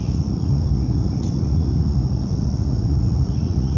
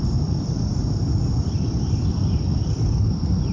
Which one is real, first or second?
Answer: second